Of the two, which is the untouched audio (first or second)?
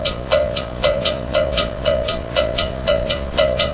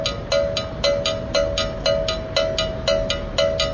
second